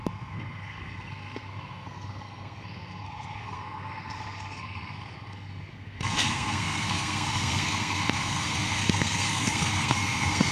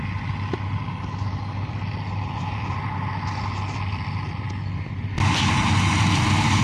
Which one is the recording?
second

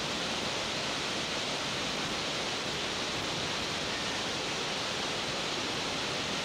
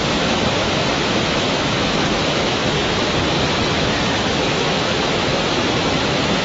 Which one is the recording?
first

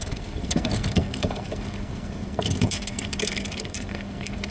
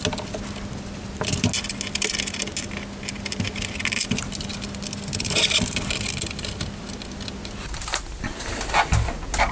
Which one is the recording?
second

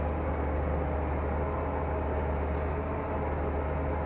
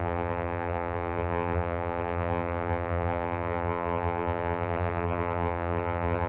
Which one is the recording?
first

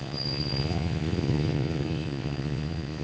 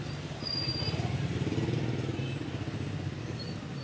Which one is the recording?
second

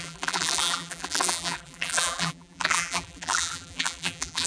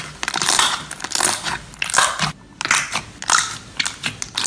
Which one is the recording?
second